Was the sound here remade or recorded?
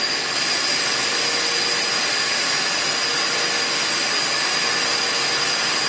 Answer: recorded